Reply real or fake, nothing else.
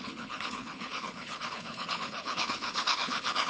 fake